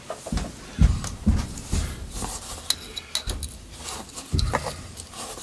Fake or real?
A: real